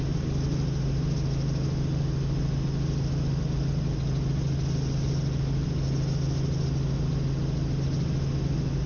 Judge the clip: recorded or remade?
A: recorded